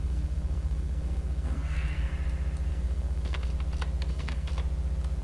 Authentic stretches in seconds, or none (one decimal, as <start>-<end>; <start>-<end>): 2.1-2.7; 3.5-4.1; 4.5-5.2